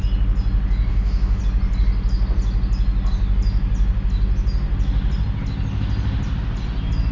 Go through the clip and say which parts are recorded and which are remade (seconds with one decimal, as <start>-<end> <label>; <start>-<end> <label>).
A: 0.0-0.9 recorded; 0.9-1.4 remade; 1.4-7.1 recorded